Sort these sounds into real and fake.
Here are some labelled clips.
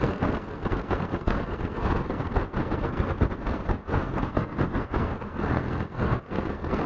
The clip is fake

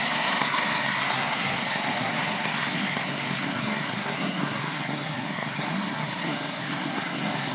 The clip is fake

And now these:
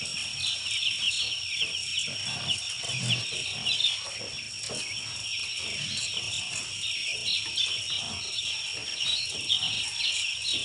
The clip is real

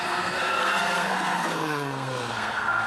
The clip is fake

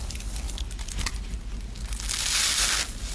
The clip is real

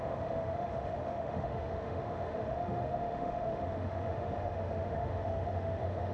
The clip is fake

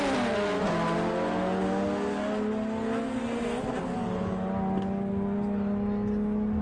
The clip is real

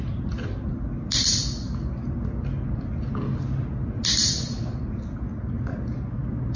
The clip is real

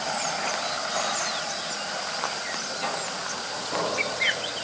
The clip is real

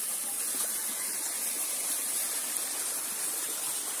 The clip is real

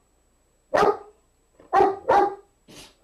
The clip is fake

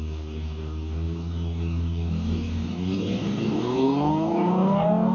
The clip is fake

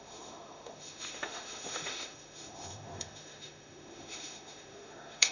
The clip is fake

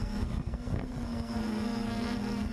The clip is fake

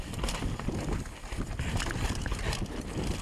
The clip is real